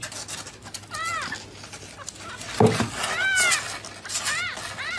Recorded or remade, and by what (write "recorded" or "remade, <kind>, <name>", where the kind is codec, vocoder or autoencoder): recorded